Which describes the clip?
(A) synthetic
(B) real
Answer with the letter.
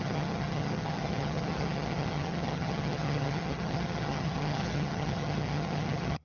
A